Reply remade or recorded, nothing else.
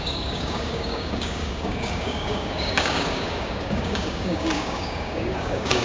remade